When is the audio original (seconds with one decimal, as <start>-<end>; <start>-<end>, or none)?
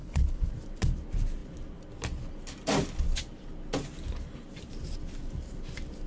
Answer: 0.5-6.1